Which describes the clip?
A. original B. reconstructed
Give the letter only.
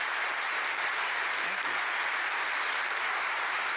B